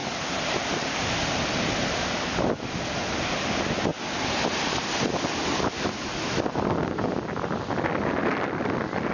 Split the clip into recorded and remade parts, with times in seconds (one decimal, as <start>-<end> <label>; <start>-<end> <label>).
0.0-9.1 recorded